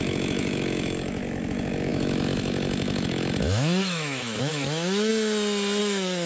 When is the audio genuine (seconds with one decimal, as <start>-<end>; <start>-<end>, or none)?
5.1-5.8